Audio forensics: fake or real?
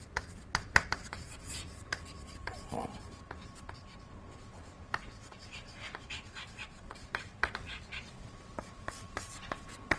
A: fake